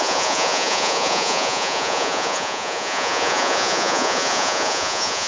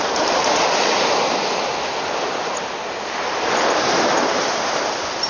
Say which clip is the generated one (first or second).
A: first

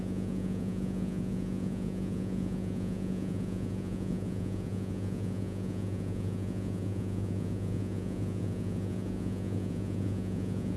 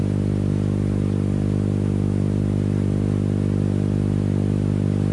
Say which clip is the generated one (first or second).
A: first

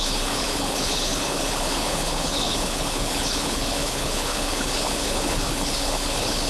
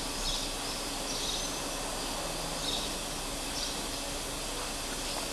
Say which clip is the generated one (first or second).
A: first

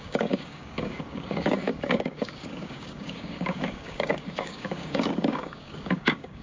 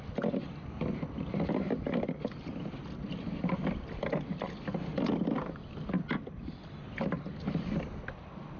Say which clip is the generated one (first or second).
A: first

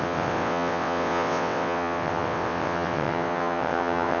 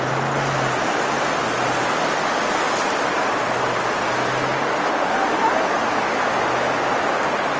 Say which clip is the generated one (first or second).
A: first